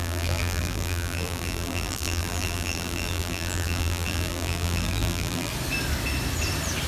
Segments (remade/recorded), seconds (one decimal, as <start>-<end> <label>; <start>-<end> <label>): 0.0-5.5 remade; 5.5-6.9 recorded